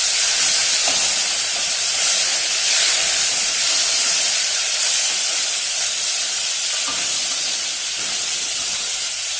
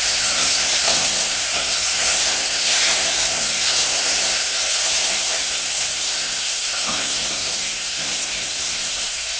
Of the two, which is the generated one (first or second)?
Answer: second